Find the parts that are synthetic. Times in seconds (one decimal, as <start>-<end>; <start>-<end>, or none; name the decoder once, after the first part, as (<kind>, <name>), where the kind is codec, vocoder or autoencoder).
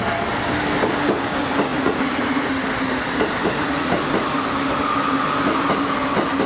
1.7-2.5 (vocoder, Vocos); 3.4-4.0